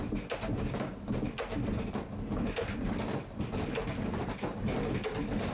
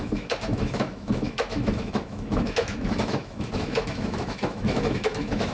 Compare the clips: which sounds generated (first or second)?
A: second